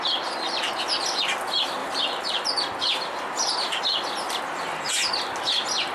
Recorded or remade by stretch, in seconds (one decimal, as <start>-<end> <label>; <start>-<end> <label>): 0.0-1.8 recorded; 1.8-3.8 remade; 3.8-5.9 recorded